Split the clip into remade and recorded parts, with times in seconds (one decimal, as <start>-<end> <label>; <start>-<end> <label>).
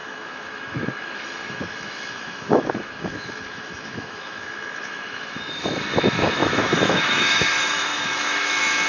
0.0-8.9 remade